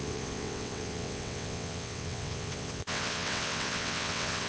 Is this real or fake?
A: fake